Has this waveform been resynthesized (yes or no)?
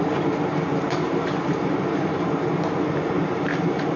yes